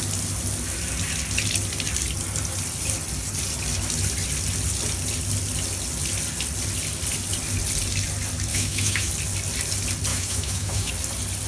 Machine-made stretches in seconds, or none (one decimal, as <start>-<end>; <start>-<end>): 8.5-9.1; 10.1-10.9